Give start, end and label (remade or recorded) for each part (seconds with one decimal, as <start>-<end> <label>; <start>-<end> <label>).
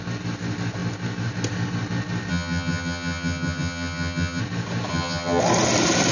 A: 0.0-2.3 recorded; 2.3-4.4 remade; 4.4-4.9 recorded; 4.9-5.4 remade; 5.4-6.1 recorded